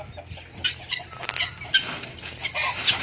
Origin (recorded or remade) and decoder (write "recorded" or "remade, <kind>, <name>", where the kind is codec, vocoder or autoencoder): recorded